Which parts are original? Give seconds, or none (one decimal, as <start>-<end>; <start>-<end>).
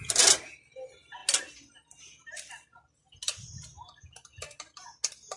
0.0-5.4